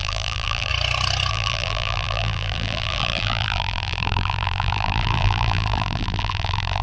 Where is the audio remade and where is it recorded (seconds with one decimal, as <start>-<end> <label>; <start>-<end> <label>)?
0.0-0.7 remade; 0.7-1.3 recorded; 1.3-6.8 remade